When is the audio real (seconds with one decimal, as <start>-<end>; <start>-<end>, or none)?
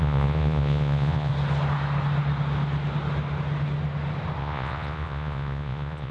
1.3-4.4